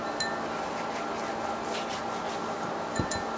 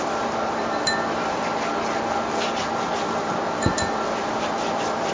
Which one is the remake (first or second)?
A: second